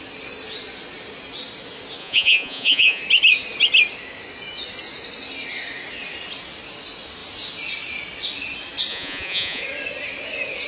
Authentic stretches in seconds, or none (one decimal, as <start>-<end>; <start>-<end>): 0.0-2.0; 3.0-8.9; 9.6-10.7